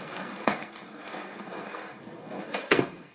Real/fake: fake